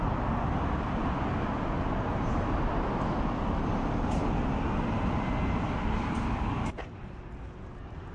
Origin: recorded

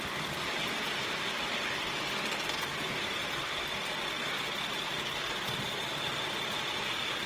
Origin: recorded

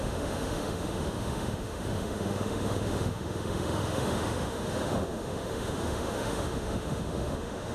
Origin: remade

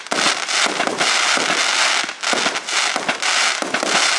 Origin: recorded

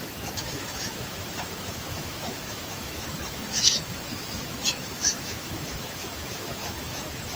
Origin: remade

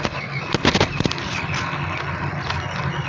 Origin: recorded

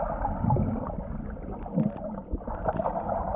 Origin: recorded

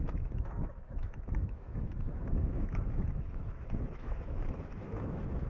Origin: remade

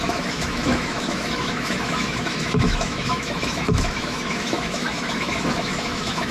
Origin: remade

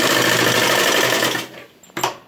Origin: recorded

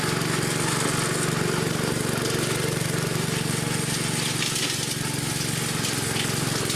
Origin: recorded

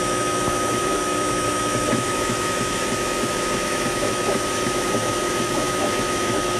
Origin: remade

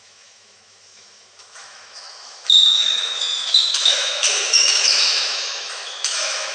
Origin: remade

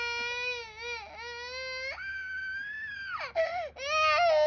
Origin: recorded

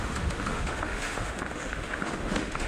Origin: remade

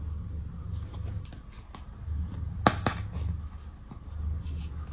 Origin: recorded